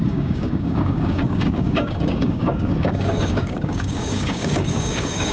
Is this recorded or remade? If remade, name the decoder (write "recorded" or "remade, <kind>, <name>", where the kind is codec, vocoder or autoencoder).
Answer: remade, codec, DAC